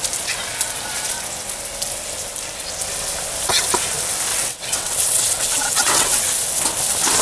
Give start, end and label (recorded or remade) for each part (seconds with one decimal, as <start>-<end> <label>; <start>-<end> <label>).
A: 0.0-4.3 recorded; 4.3-6.2 remade; 6.2-7.2 recorded